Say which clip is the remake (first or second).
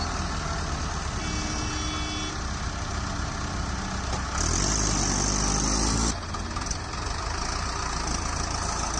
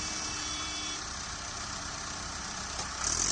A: second